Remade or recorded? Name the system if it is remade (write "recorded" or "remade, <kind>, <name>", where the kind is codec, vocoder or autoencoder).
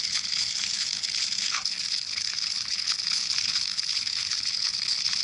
remade, codec, HILCodec